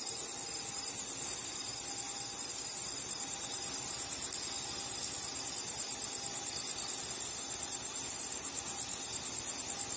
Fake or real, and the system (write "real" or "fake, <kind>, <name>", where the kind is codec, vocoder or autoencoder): real